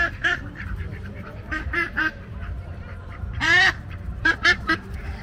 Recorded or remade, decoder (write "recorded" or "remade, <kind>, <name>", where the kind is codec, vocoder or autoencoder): remade, vocoder, BigVGAN v2